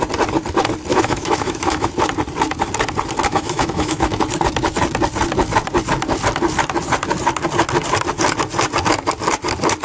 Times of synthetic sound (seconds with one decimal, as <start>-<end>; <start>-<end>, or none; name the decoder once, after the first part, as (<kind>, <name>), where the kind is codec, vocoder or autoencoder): 0.9-1.9 (autoencoder, DAC-VAE); 3.3-4.2